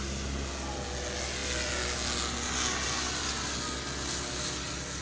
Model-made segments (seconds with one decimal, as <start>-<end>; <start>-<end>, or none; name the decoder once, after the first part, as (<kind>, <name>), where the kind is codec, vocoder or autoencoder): none